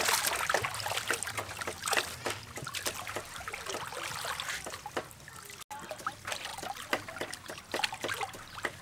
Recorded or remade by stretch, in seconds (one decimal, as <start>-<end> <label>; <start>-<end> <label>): 0.0-8.8 recorded